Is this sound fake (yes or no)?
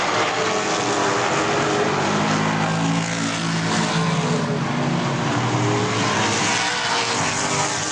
no